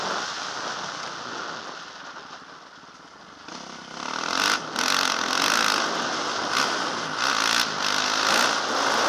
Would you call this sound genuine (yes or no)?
yes